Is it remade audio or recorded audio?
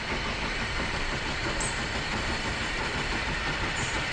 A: remade